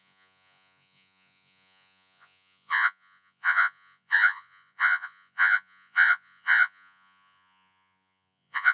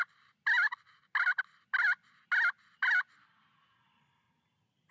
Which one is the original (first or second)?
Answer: second